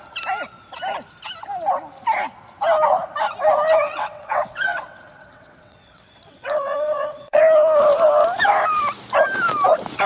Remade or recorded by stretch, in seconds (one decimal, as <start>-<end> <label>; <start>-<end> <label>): 0.0-3.9 recorded; 3.9-7.4 remade; 7.4-10.1 recorded